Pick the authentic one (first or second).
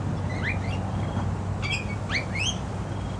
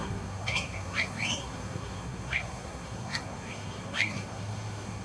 first